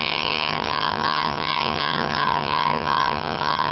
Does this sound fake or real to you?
fake